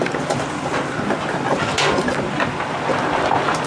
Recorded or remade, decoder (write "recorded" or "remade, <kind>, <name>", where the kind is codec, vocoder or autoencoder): recorded